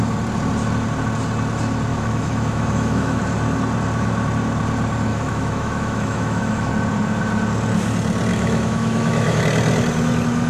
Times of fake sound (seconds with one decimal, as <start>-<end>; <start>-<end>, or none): 1.9-3.2; 5.1-6.7; 8.3-9.4